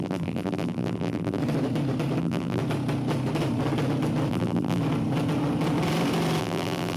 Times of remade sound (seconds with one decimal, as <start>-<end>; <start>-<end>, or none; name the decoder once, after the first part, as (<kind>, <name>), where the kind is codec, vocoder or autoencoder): 0.0-1.4 (vocoder, BigVGAN v2); 2.2-2.6; 4.3-4.8; 6.4-7.0